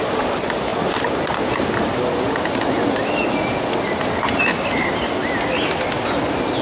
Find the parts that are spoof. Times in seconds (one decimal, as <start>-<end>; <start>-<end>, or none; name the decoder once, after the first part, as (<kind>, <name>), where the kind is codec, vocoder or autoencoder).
none